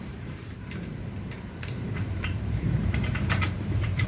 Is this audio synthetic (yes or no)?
yes